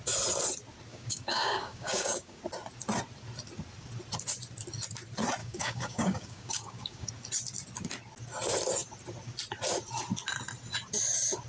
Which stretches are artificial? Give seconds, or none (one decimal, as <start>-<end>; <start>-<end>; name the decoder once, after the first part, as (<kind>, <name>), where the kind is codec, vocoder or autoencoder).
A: 0.9-2.4 (codec, DAC); 5.4-7.1